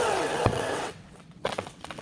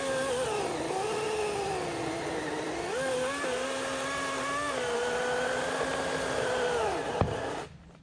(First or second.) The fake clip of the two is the first